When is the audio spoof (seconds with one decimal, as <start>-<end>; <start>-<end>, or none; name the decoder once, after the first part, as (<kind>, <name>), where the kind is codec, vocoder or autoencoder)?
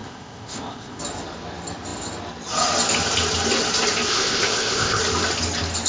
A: 0.0-1.0 (codec, ZipCodec); 4.1-5.0